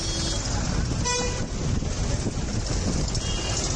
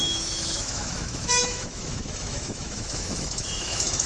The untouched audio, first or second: first